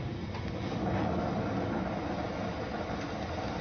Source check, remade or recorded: recorded